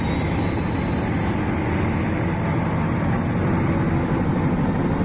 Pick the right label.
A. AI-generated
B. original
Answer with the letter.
B